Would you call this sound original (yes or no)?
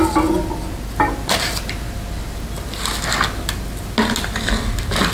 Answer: yes